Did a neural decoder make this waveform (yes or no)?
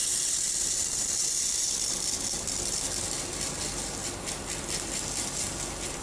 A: no